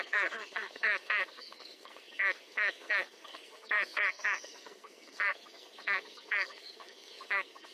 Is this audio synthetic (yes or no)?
yes